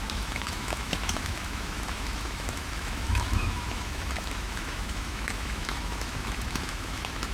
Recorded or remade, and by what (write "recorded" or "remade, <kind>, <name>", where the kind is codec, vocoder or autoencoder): remade, autoencoder, DAC-VAE